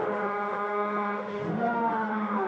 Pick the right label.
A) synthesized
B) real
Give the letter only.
A